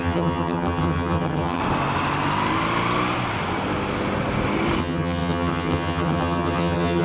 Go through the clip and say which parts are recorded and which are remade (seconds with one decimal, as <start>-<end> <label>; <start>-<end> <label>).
0.0-1.6 remade; 1.6-4.8 recorded; 4.8-7.0 remade